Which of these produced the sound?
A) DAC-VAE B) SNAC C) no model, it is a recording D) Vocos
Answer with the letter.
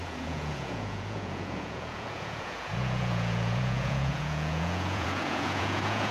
D